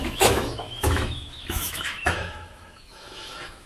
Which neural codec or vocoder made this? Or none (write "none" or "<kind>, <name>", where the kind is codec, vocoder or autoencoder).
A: autoencoder, DAC-VAE